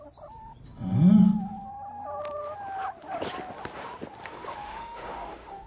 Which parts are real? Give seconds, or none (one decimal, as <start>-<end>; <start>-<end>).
0.0-4.3